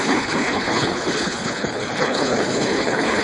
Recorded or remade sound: remade